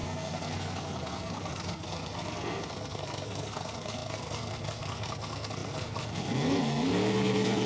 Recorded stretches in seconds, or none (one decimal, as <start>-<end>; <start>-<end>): none